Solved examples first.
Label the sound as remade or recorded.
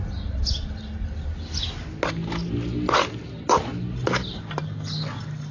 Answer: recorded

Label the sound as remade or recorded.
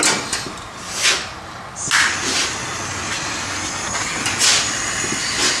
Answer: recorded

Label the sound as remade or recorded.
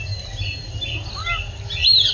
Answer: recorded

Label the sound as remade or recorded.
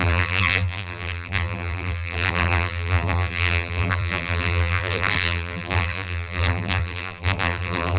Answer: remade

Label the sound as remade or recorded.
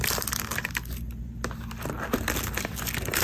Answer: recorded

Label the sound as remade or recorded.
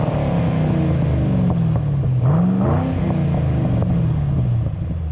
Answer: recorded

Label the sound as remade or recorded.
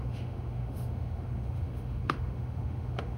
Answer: remade